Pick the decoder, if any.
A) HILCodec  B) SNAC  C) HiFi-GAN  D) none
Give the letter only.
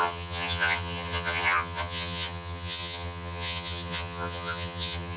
C